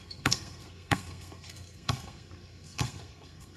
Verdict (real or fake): fake